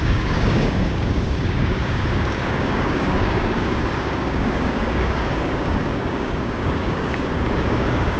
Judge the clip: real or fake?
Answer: fake